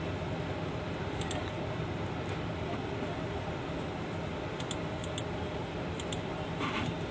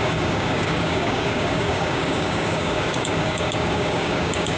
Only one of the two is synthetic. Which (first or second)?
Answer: second